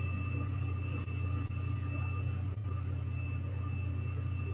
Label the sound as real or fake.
real